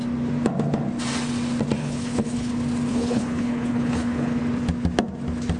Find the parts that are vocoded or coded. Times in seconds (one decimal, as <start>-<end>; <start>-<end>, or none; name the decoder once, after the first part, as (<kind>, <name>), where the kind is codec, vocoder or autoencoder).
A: 1.8-2.5 (codec, HILCodec); 2.9-4.4